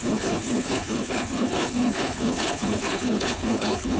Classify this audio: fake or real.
fake